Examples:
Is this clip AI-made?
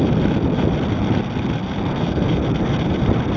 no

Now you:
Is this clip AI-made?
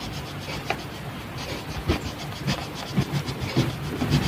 no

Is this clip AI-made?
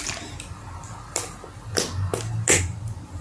no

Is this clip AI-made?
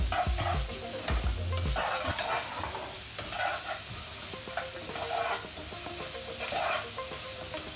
no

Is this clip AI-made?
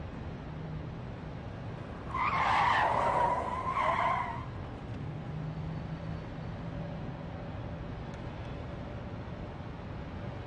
no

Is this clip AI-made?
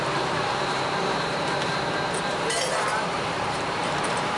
yes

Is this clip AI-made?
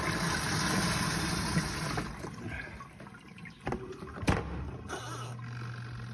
no